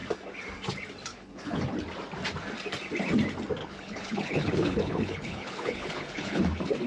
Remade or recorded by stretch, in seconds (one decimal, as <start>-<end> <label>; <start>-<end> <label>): 0.0-1.1 recorded; 1.1-1.6 remade; 1.6-3.6 recorded; 3.6-6.4 remade; 6.4-6.9 recorded